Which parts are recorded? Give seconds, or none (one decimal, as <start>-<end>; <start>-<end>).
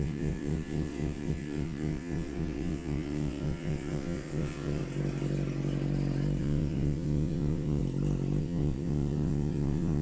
4.8-6.4; 7.8-8.4